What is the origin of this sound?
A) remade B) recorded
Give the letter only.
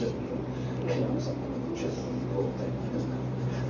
B